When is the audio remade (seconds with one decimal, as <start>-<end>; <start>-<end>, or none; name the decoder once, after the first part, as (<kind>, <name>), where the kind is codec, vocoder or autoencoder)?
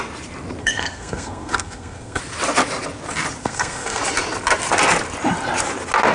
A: 0.6-2.2 (codec, SNAC); 3.4-4.0